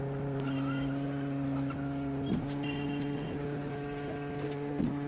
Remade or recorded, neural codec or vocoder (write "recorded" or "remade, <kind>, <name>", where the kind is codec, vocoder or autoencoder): recorded